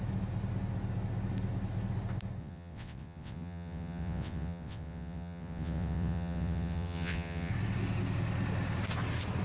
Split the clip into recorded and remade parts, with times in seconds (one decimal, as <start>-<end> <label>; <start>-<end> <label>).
0.0-2.4 recorded; 2.4-7.5 remade; 7.5-9.4 recorded